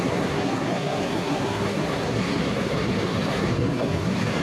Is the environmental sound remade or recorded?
remade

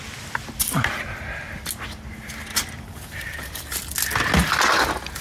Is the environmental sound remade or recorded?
recorded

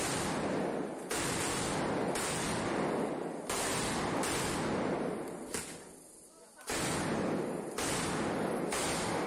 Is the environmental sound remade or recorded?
recorded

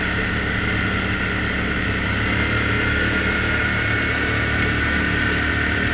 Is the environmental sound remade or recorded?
recorded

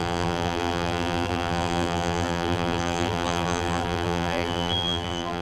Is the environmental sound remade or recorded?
remade